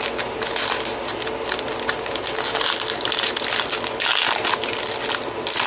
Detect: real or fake real